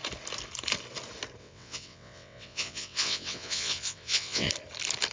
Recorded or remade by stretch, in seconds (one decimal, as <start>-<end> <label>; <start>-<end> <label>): 0.0-1.4 recorded; 1.4-4.5 remade; 4.5-5.1 recorded